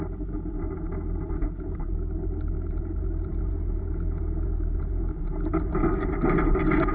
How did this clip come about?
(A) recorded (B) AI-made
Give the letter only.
A